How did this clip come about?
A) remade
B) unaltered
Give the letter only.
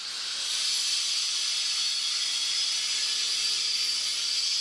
B